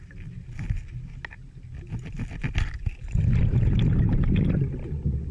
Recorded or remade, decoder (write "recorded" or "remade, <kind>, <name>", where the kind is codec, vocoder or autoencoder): recorded